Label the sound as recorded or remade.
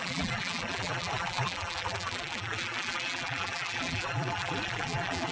remade